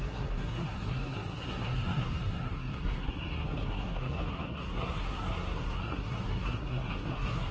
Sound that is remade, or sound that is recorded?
remade